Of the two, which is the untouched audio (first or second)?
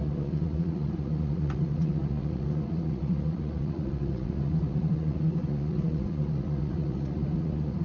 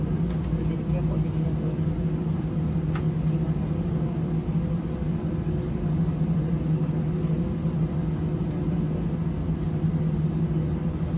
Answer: second